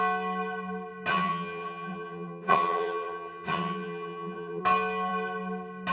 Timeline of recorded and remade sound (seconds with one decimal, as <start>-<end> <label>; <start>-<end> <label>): 0.0-1.1 recorded; 1.1-4.6 remade; 4.6-5.9 recorded